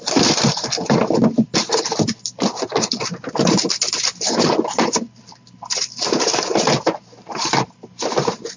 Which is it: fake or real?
fake